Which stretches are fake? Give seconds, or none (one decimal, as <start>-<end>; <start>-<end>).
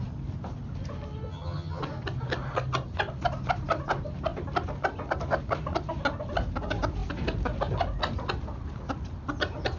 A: 1.3-1.8